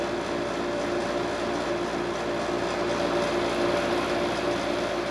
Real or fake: real